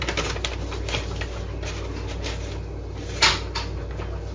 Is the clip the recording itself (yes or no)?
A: yes